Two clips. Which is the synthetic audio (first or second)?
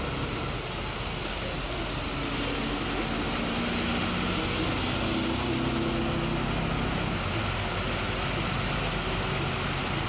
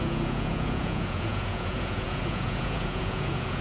second